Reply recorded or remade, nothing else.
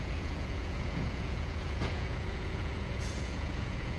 remade